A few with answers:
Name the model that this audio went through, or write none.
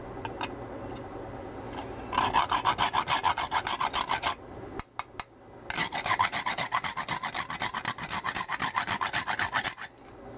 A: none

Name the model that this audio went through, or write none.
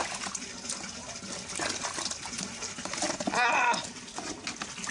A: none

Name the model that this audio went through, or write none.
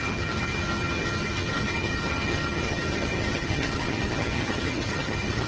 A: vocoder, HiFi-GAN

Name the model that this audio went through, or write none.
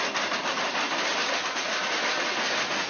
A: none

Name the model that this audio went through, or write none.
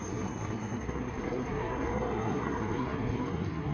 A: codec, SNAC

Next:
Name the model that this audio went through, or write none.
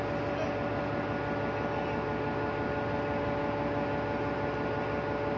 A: none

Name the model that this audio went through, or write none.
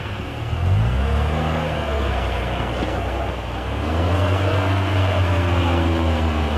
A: codec, SNAC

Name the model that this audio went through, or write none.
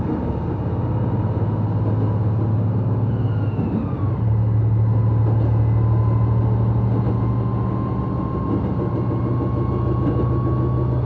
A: none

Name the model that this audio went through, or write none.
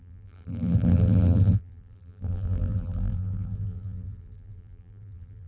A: vocoder, BigVGAN v2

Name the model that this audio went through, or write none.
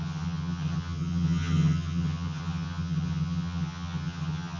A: vocoder, HiFi-GAN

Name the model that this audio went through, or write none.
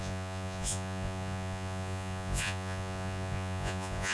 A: vocoder, Vocos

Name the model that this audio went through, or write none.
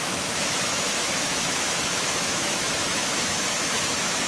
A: autoencoder, DAC-VAE